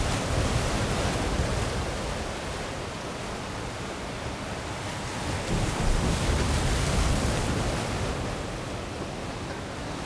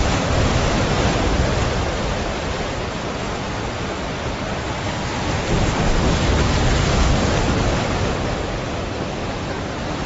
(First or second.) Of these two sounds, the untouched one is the first